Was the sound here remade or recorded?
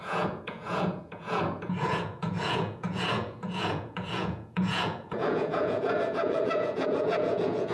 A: remade